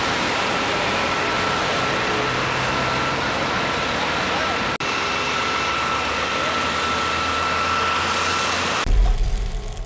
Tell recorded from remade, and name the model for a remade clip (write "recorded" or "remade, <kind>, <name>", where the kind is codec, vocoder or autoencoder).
recorded